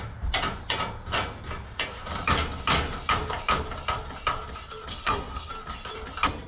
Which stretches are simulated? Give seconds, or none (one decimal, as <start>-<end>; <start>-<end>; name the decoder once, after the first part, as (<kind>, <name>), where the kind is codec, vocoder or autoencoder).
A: 4.9-5.5 (codec, SNAC)